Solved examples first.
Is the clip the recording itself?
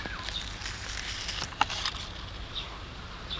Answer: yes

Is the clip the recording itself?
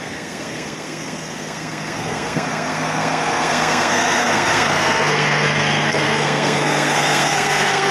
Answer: no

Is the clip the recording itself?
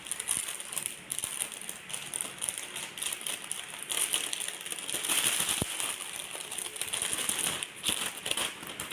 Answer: yes